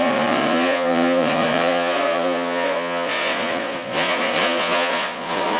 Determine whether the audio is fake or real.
fake